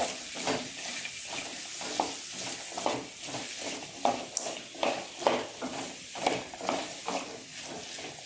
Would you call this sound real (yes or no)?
yes